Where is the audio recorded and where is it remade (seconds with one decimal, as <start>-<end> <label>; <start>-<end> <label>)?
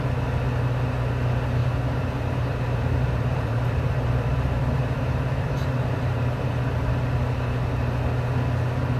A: 0.0-1.6 recorded; 1.6-6.5 remade; 6.5-9.0 recorded